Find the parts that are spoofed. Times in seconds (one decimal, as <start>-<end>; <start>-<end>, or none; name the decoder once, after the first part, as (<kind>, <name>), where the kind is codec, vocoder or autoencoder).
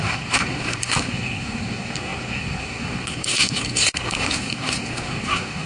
0.0-5.7 (codec, SNAC)